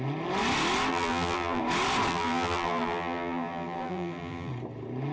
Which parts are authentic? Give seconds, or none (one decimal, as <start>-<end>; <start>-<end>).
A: 0.0-0.9; 1.6-2.1; 4.5-5.1